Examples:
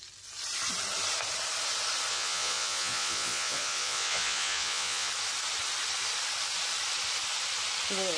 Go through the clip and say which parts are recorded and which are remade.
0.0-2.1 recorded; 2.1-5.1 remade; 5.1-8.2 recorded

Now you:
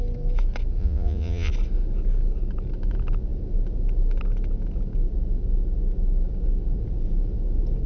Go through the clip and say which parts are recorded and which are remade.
0.0-0.8 recorded; 0.8-1.5 remade; 1.5-7.9 recorded

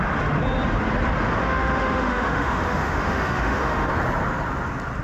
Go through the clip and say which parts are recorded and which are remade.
0.0-1.3 recorded; 1.3-3.9 remade; 3.9-5.0 recorded

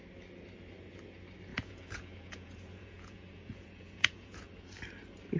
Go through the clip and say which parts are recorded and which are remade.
0.0-1.5 recorded; 1.5-4.5 remade; 4.5-5.4 recorded

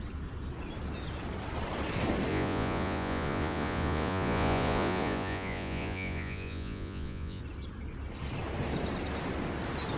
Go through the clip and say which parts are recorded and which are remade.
0.0-2.3 recorded; 2.3-7.4 remade; 7.4-10.0 recorded

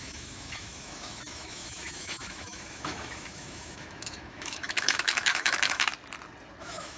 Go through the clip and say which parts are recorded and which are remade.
0.0-5.9 remade; 5.9-6.6 recorded; 6.6-7.0 remade

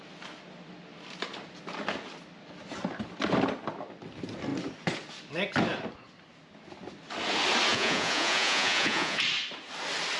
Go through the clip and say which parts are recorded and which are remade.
0.0-7.7 recorded; 7.7-9.2 remade; 9.2-10.2 recorded

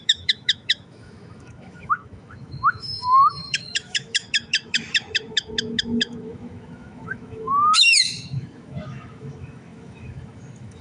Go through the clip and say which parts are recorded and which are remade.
0.0-10.8 remade